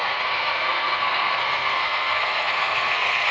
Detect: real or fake fake